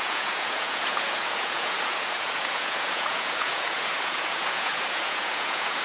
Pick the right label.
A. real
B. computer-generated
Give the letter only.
B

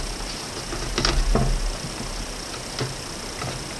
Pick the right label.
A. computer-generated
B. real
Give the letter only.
B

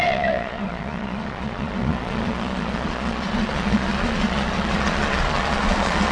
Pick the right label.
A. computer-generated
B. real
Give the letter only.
A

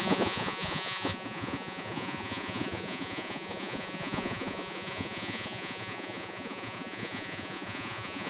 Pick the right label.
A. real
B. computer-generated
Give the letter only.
B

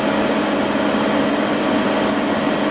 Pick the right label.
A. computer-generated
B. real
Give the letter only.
B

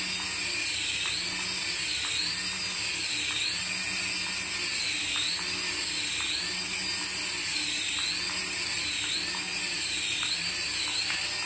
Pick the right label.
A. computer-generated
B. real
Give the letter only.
B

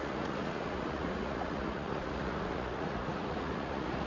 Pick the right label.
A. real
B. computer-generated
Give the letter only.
B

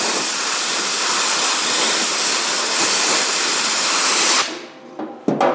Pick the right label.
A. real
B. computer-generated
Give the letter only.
A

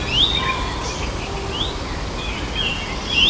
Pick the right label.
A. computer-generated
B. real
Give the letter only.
B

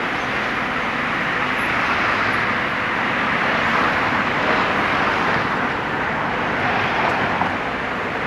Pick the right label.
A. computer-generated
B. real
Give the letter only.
B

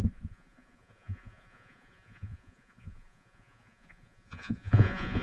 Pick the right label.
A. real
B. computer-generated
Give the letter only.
B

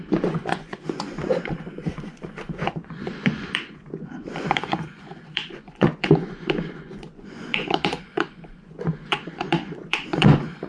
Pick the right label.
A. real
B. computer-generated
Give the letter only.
B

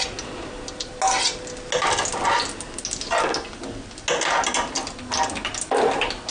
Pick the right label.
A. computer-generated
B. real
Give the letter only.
B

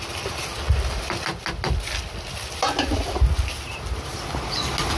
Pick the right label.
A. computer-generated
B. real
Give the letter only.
B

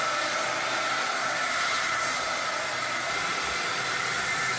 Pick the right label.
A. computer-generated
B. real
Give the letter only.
B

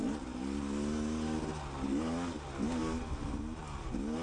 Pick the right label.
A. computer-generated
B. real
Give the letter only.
B